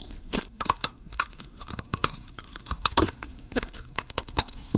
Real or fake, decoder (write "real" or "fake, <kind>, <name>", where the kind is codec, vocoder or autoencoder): fake, codec, SNAC